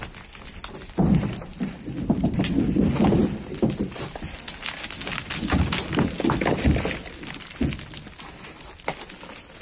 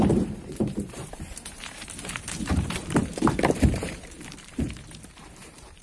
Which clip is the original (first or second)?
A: first